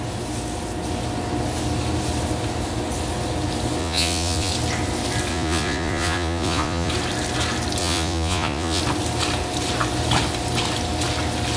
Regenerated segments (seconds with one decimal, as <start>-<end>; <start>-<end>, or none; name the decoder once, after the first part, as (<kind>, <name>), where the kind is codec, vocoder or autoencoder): 3.8-4.5 (vocoder, Vocos); 5.3-6.9; 7.8-8.8